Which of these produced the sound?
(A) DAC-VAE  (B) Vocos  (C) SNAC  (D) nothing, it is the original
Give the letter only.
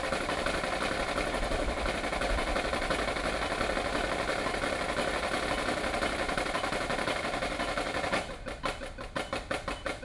D